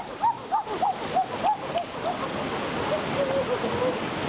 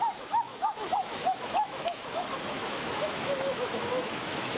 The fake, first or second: second